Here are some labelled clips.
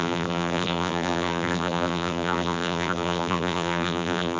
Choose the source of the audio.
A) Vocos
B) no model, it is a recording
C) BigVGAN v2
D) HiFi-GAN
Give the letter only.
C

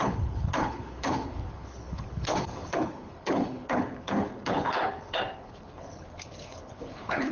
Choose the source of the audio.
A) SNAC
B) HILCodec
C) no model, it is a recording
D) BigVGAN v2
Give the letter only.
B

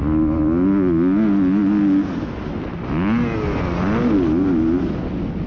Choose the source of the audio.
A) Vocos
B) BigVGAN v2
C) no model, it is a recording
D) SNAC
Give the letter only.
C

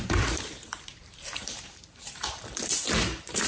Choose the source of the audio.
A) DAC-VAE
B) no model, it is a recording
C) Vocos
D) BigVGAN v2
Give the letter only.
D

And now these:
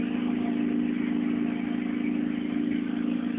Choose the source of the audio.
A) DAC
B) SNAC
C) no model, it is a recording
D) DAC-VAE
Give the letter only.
C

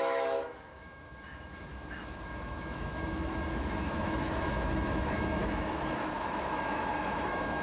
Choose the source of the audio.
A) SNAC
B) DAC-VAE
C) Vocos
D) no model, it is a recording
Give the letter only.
B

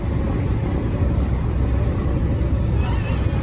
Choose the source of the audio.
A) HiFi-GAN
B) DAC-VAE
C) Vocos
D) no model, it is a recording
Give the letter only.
D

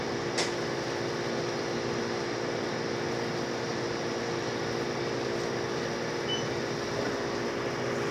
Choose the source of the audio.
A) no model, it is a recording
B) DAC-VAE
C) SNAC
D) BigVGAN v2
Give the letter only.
A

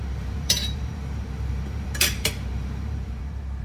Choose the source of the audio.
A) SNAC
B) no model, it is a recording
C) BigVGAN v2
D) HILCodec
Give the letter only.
C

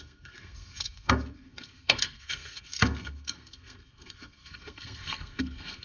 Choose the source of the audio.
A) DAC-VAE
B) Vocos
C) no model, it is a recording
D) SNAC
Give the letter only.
D